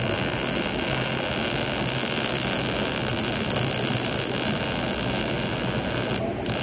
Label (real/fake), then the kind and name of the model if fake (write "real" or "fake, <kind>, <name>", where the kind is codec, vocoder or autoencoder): real